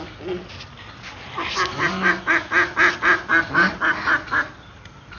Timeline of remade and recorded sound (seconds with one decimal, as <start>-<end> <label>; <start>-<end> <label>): 0.0-5.2 recorded